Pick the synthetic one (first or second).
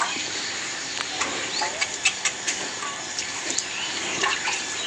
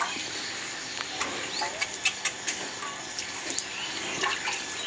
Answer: first